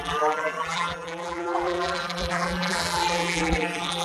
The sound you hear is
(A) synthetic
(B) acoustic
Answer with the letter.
A